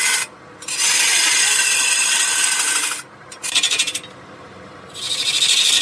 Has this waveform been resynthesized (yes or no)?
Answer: no